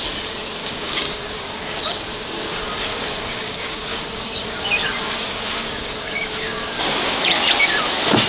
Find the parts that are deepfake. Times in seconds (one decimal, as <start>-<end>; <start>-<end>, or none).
0.6-1.8; 2.9-7.5